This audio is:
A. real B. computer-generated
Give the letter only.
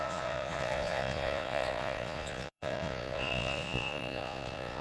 B